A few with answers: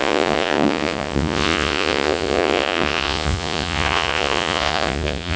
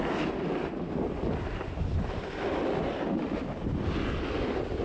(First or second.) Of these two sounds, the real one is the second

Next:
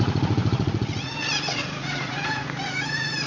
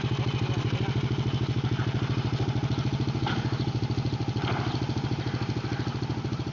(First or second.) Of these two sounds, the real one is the second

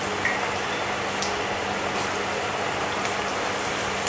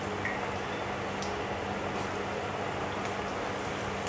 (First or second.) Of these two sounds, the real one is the second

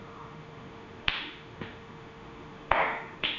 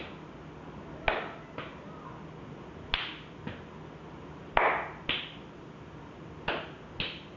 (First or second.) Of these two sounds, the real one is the second